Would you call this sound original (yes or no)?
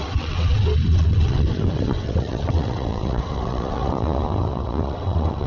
no